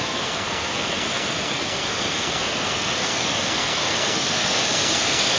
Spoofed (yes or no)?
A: yes